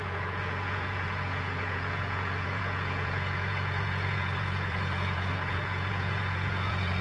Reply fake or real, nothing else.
fake